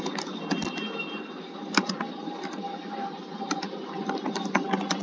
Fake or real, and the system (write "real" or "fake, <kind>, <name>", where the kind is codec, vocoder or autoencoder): real